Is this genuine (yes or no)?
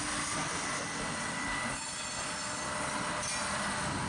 yes